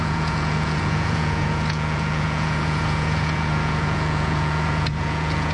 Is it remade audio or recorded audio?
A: remade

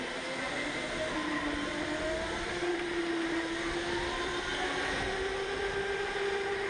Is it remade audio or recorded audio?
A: recorded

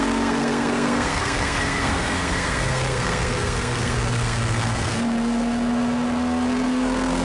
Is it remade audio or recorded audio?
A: remade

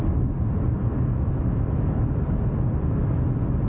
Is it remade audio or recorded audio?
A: recorded